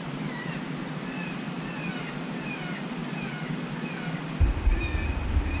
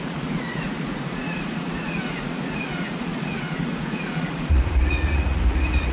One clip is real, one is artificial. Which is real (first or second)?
first